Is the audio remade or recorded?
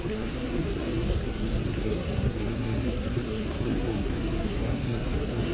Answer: remade